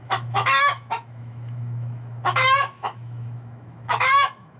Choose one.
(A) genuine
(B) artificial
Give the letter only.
B